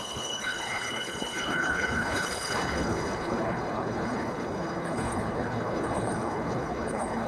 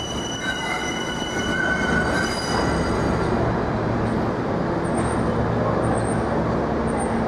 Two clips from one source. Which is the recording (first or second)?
second